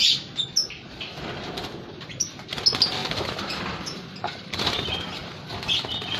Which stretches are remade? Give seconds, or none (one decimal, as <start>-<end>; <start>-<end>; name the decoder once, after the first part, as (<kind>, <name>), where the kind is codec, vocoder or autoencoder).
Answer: 0.6-1.2 (vocoder, BigVGAN v2); 3.0-4.8